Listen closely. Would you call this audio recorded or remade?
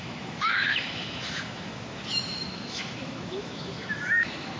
remade